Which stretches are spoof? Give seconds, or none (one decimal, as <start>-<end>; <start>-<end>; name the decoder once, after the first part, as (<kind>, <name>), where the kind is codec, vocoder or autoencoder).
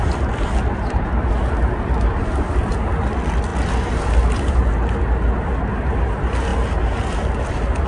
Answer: none